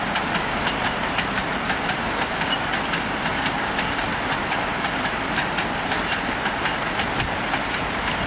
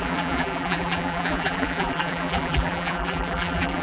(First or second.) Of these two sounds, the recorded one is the first